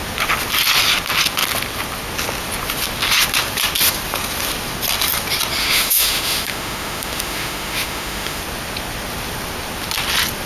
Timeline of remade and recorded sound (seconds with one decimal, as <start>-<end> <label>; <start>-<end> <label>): 0.0-5.6 recorded; 5.6-8.4 remade; 8.4-10.5 recorded

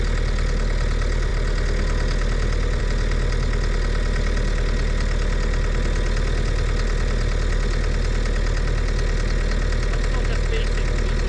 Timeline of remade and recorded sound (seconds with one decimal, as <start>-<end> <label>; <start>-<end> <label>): 0.0-11.3 recorded

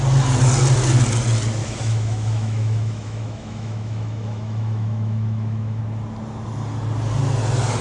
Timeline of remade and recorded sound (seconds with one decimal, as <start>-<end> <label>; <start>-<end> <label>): 0.0-1.6 recorded; 1.6-5.8 remade; 5.8-7.8 recorded

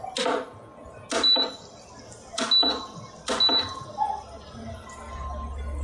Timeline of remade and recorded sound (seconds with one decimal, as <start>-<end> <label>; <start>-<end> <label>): 0.0-5.8 recorded